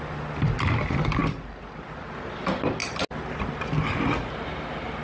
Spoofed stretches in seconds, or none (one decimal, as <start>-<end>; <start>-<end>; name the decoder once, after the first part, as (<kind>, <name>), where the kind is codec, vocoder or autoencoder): none